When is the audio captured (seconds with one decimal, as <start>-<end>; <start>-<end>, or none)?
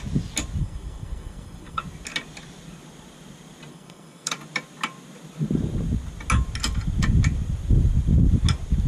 0.0-0.6; 1.8-3.7; 4.3-8.9